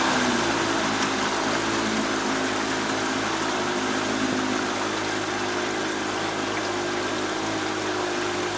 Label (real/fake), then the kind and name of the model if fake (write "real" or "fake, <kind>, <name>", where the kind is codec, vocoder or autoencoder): real